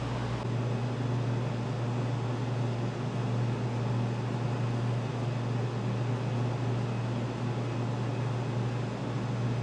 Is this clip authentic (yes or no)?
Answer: yes